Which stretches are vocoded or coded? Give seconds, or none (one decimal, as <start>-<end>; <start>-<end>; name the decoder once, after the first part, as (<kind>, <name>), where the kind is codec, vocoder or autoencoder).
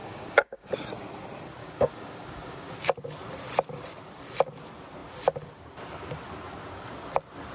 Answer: 0.0-0.7 (codec, DAC); 1.6-2.7